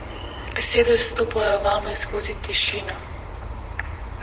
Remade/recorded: remade